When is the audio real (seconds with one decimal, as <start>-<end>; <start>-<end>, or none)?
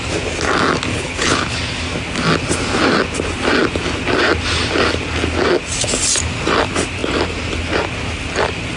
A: 0.0-0.9; 1.6-8.8